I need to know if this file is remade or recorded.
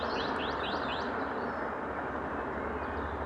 recorded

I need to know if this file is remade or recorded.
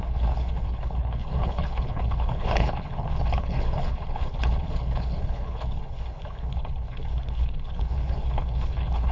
remade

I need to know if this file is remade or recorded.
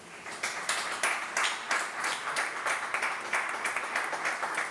recorded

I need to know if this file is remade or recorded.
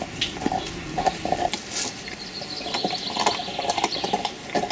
recorded